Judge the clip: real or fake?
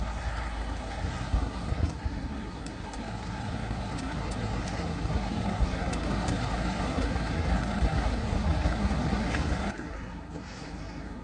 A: fake